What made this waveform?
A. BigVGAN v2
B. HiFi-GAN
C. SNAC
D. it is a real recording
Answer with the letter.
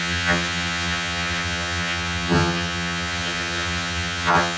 B